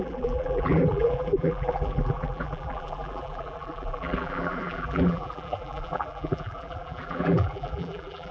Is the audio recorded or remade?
remade